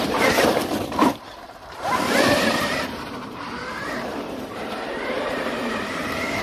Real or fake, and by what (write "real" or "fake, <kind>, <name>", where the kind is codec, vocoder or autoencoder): fake, vocoder, BigVGAN v2